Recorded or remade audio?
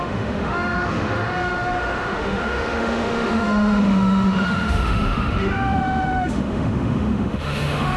remade